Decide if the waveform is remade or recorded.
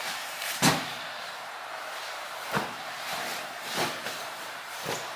remade